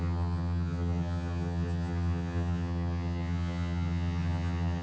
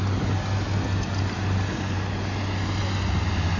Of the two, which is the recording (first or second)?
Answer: second